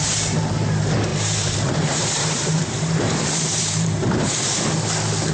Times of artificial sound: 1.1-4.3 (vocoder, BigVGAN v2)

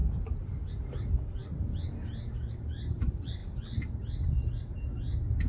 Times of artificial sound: none

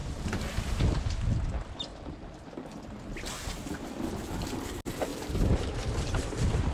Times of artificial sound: 0.0-0.8 (vocoder, BigVGAN v2); 1.9-2.5; 5.1-6.7

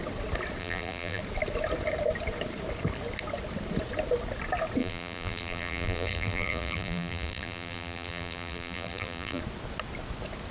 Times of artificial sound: 0.6-1.2 (vocoder, BigVGAN v2); 4.8-9.4

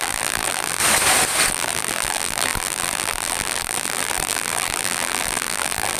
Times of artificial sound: 0.0-0.8 (vocoder, BigVGAN v2); 1.5-6.0

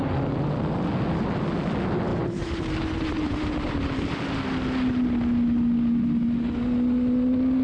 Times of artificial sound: 2.1-4.4 (vocoder, BigVGAN v2)

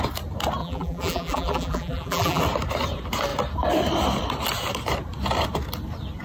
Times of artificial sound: 0.6-2.4 (vocoder, BigVGAN v2)

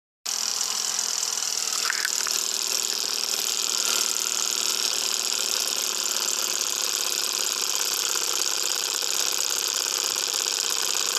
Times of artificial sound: 0.5-3.6 (vocoder, BigVGAN v2); 4.7-9.0